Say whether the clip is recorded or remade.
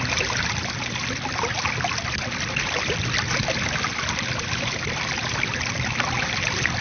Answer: recorded